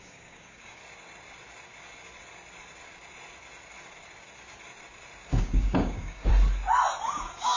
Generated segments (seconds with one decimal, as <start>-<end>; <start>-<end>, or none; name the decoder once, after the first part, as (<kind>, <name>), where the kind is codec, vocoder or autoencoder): 0.0-0.8 (codec, DAC); 5.4-6.3; 7.1-7.6